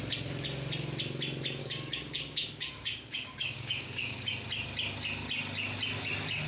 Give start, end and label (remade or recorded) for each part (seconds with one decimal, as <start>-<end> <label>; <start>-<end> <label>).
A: 0.0-1.6 recorded; 1.6-4.3 remade; 4.3-6.5 recorded